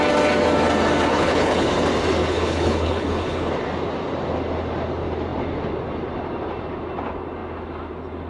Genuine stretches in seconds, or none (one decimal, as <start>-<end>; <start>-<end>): 0.0-1.1; 1.7-2.2; 3.5-8.3